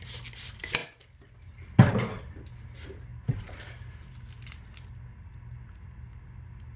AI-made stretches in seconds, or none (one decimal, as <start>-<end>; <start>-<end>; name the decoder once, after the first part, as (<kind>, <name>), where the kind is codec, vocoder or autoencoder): 0.8-2.1 (vocoder, BigVGAN v2)